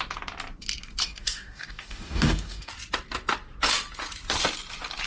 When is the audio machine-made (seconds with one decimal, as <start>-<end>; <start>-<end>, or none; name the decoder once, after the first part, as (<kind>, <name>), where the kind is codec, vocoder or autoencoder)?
1.0-2.7 (codec, DAC)